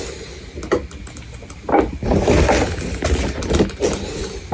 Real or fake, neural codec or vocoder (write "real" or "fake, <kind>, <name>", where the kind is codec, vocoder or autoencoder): real